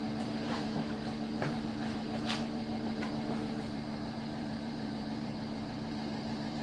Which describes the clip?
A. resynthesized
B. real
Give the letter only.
A